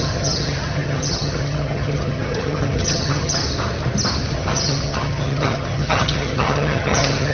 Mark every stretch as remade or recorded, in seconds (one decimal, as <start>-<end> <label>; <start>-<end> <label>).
0.0-3.4 remade; 3.4-4.3 recorded; 4.3-7.3 remade